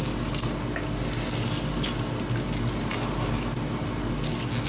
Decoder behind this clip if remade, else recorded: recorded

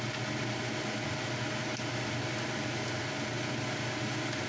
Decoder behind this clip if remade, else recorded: recorded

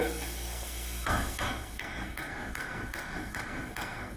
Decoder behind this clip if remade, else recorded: remade, codec, SNAC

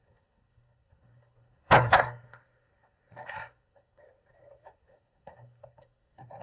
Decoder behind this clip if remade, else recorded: remade, codec, SNAC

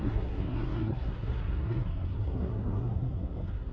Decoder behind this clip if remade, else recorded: remade, codec, SNAC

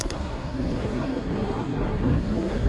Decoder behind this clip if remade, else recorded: remade, codec, SNAC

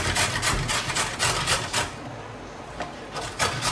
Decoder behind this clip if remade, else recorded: recorded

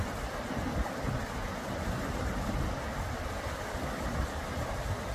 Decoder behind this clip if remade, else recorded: recorded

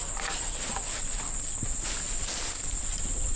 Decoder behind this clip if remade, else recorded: recorded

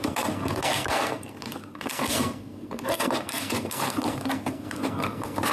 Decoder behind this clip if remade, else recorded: remade, codec, SNAC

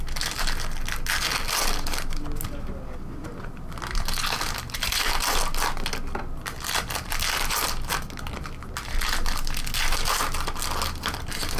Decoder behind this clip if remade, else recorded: recorded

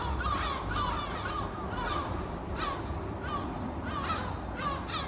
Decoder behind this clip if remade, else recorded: recorded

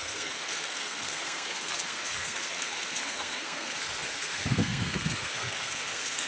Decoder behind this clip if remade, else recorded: remade, codec, SNAC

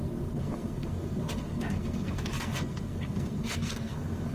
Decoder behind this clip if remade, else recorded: remade, codec, SNAC